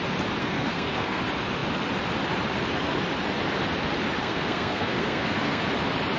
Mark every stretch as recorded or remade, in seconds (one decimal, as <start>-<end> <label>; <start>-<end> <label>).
0.0-0.4 recorded; 0.4-1.2 remade; 1.2-4.2 recorded; 4.2-5.6 remade; 5.6-6.2 recorded